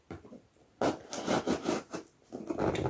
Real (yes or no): yes